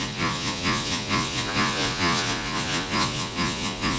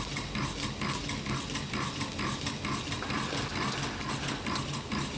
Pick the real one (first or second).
second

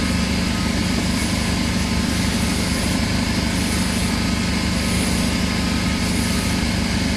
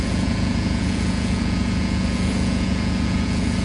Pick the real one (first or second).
first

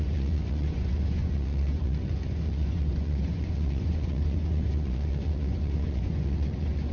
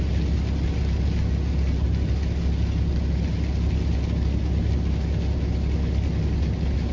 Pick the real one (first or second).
second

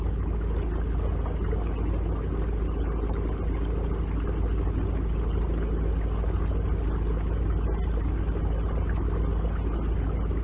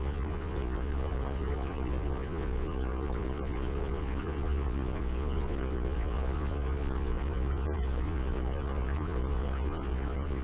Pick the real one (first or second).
first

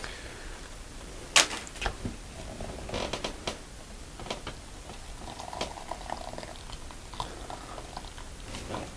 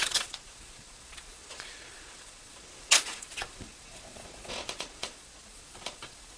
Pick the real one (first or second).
first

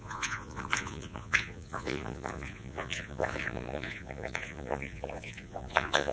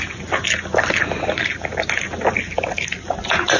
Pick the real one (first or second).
second